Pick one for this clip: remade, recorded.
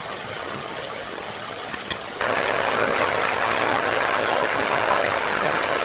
remade